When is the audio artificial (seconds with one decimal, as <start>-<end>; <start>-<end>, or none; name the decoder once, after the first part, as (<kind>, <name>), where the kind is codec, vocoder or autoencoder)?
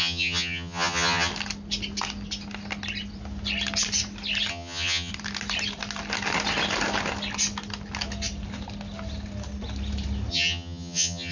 0.0-1.3 (vocoder, HiFi-GAN); 4.5-5.1; 10.3-11.3